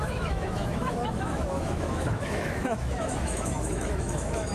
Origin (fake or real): fake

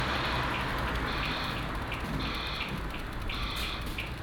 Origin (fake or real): real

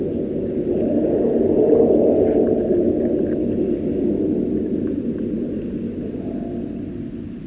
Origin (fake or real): real